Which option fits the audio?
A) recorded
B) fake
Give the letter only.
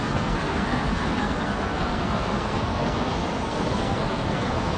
B